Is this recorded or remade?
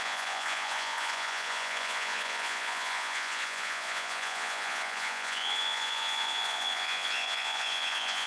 remade